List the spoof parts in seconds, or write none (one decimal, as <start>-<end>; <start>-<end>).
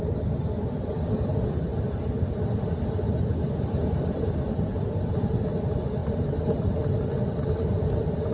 none